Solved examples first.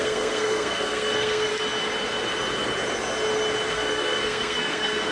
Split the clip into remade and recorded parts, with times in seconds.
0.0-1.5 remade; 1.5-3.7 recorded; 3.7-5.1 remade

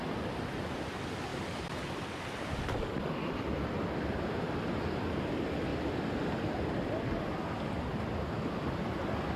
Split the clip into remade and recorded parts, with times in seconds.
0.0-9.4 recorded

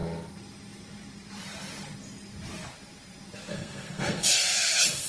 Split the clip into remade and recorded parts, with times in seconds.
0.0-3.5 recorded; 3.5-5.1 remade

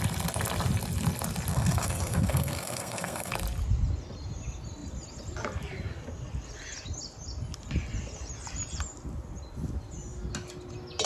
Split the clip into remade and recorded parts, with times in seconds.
0.0-1.5 recorded; 1.5-3.3 remade; 3.3-11.1 recorded

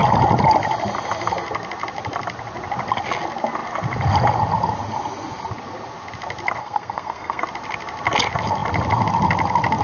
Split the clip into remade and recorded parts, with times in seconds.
0.0-6.6 recorded; 6.6-7.4 remade; 7.4-9.8 recorded

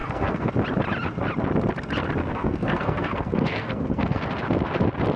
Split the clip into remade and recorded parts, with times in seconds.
0.0-0.5 remade; 0.5-2.2 recorded; 2.2-4.2 remade; 4.2-5.2 recorded

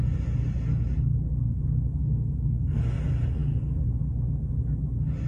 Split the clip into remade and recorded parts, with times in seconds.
0.0-2.0 recorded; 2.0-2.8 remade; 2.8-5.3 recorded